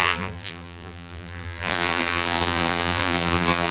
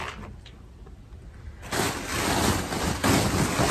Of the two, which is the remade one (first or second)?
first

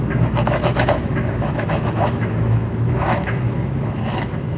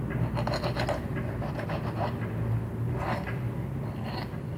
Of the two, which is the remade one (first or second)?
first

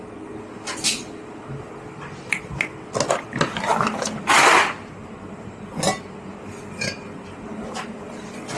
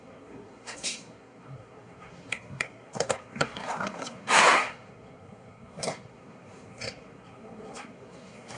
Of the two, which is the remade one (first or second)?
second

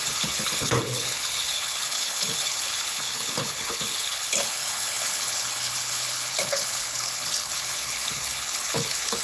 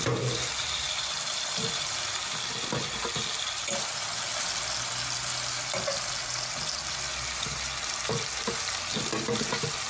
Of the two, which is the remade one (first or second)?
first